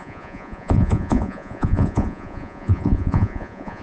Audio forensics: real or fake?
fake